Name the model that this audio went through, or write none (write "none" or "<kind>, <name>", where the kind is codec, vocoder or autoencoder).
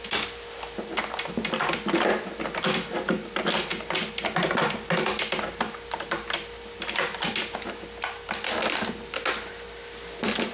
none